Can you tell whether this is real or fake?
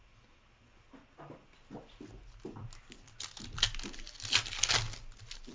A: real